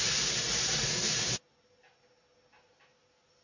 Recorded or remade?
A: recorded